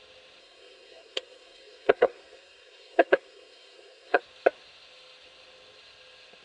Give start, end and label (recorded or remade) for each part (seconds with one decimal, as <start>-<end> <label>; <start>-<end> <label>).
0.0-0.4 recorded; 0.4-4.2 remade; 4.2-6.4 recorded